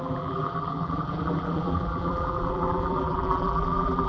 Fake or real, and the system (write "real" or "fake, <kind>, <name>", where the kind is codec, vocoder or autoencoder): fake, vocoder, BigVGAN v2